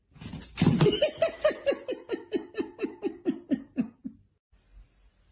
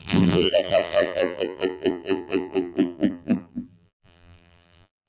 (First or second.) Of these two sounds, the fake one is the second